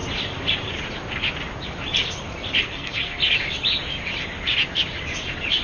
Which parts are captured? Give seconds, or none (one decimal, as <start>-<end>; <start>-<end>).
0.0-2.6; 3.2-5.6